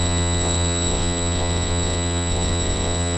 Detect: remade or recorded remade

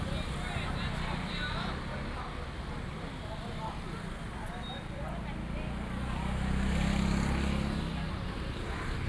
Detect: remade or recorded recorded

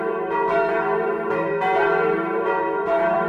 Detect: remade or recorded remade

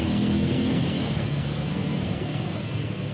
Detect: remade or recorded remade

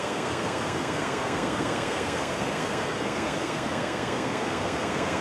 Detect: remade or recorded remade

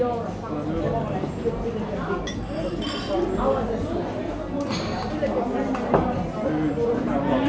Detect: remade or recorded recorded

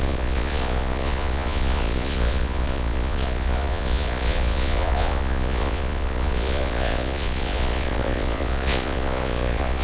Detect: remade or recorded remade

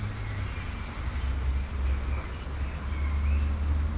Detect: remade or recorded recorded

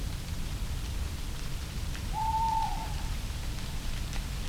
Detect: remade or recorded remade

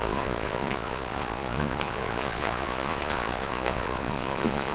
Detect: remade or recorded remade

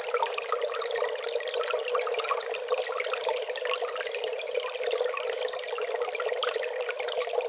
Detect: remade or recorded recorded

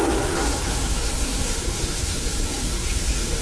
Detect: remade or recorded remade